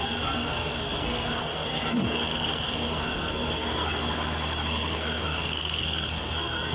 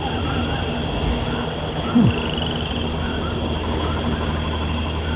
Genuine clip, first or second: second